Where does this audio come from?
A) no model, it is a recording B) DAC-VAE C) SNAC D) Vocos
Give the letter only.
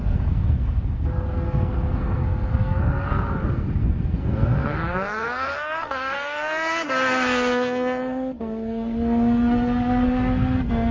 C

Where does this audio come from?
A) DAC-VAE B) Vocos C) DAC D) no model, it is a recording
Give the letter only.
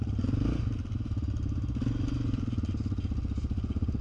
D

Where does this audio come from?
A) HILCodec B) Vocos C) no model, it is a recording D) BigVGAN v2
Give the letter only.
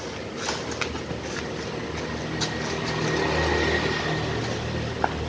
C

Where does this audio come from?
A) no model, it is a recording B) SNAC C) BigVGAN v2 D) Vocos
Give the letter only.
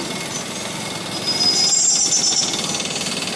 A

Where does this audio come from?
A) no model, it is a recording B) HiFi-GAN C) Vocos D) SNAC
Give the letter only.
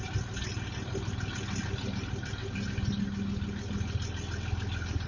A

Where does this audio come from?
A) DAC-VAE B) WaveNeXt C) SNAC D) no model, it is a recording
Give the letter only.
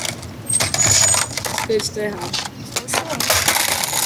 D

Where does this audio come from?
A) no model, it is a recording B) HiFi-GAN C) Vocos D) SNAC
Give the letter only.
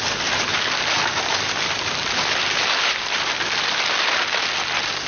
A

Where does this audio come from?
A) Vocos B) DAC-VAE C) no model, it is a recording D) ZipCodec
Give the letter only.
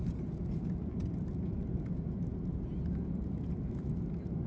C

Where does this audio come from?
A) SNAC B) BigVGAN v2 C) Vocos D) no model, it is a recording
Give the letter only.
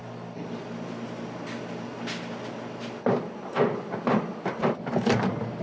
D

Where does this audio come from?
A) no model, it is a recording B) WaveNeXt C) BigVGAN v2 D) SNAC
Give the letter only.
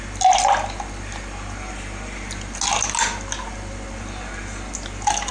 A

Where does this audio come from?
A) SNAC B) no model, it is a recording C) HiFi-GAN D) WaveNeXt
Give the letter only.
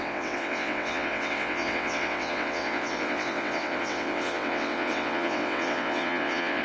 D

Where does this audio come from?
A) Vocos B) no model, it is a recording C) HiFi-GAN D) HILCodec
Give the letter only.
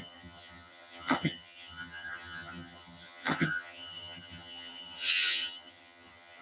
C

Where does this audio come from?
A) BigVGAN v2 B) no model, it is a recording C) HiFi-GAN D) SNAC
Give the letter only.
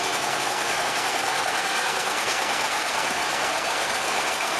D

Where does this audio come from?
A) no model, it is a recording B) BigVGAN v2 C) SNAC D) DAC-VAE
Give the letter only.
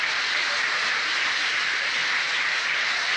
B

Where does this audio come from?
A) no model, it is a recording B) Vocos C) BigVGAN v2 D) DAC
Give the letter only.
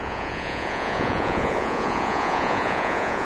B